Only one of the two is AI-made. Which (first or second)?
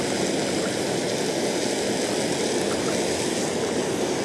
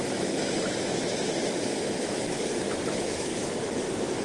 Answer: second